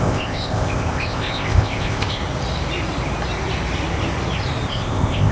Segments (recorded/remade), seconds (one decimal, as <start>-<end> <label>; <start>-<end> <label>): 0.0-2.2 remade; 2.2-4.7 recorded; 4.7-5.3 remade